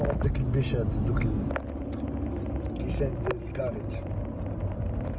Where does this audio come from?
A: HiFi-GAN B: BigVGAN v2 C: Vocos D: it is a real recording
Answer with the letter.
D